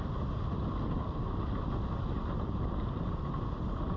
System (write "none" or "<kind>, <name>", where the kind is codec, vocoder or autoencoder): none